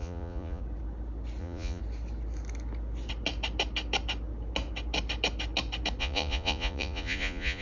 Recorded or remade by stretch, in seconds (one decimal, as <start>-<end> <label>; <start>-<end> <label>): 0.0-0.6 remade; 0.6-1.4 recorded; 1.4-1.8 remade; 1.8-6.0 recorded; 6.0-7.6 remade